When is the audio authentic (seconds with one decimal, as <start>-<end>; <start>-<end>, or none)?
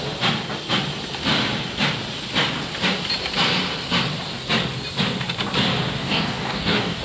0.0-6.0